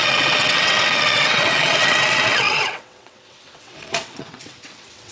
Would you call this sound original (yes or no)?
no